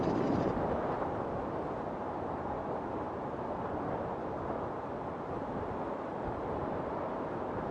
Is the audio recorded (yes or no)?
yes